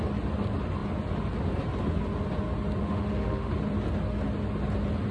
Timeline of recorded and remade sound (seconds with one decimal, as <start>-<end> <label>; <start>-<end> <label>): 0.0-2.8 recorded; 2.8-3.5 remade; 3.5-5.1 recorded